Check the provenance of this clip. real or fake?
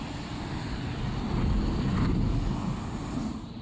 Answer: real